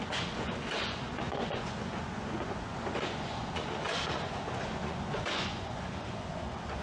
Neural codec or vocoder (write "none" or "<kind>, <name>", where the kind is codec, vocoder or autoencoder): vocoder, Vocos